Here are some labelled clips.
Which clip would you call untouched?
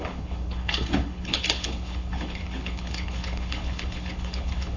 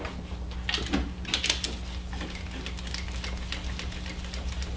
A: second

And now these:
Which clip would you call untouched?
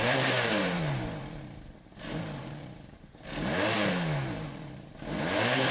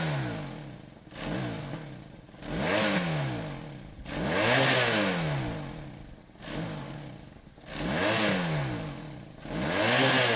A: second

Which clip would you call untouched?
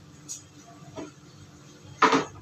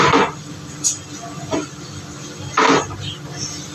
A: second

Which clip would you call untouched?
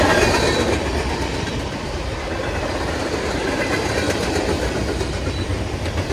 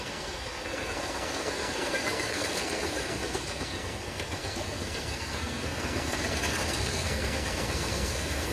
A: first